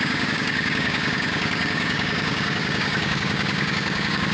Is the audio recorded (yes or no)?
no